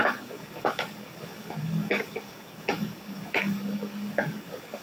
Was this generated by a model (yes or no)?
yes